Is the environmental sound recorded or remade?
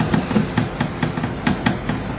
recorded